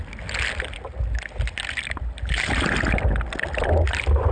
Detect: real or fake real